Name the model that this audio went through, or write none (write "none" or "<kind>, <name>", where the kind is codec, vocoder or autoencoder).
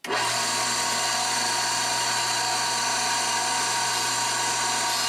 none